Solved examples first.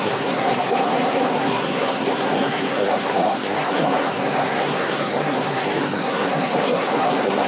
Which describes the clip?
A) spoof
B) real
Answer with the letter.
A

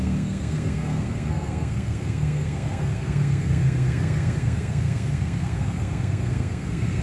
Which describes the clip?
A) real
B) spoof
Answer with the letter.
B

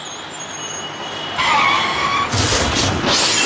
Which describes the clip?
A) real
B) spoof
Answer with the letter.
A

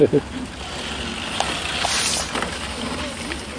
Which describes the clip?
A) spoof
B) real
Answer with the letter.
B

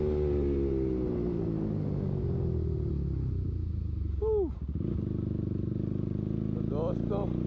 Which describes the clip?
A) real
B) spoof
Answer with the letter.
A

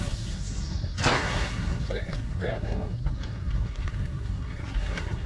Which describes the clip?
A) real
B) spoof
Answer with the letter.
B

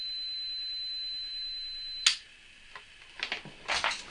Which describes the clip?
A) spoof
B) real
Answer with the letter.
B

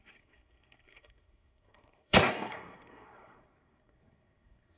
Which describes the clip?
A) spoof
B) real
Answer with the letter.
A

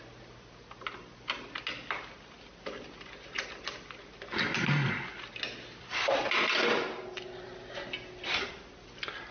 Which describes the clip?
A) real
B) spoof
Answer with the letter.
A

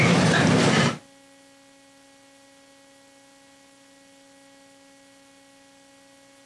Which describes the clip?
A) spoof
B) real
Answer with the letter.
B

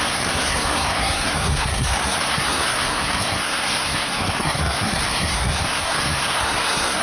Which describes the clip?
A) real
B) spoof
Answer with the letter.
B